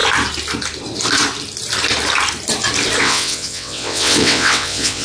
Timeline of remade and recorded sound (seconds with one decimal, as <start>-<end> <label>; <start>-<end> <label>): 0.0-3.0 recorded; 3.0-5.0 remade